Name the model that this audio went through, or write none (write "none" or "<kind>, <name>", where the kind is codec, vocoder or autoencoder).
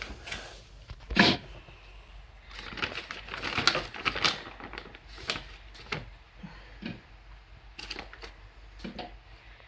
none